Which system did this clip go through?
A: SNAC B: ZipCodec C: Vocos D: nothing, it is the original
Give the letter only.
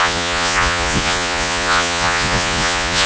C